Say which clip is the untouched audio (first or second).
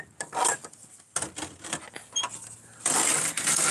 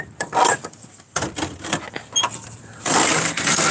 first